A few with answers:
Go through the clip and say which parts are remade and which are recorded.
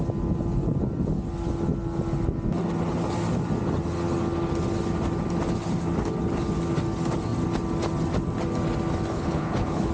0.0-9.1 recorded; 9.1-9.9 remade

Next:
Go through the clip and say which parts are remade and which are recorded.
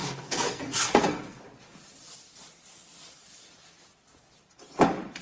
0.0-1.4 remade; 1.4-5.2 recorded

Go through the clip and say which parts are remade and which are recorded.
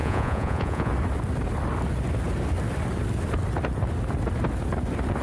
0.0-0.9 remade; 0.9-5.2 recorded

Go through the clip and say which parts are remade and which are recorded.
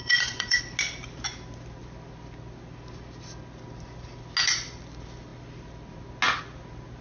0.0-0.6 remade; 0.6-7.0 recorded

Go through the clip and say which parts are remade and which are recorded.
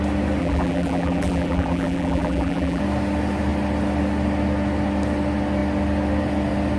0.0-0.4 recorded; 0.4-2.8 remade; 2.8-6.8 recorded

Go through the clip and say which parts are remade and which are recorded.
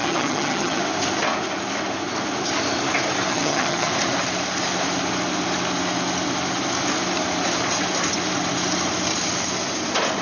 0.0-0.8 remade; 0.8-3.3 recorded; 3.3-3.9 remade; 3.9-10.2 recorded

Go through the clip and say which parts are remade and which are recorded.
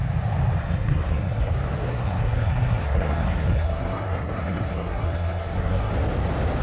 0.0-0.6 recorded; 0.6-1.5 remade; 1.5-1.9 recorded; 1.9-5.9 remade; 5.9-6.6 recorded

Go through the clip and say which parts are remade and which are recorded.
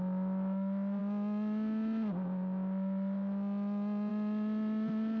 0.0-5.2 recorded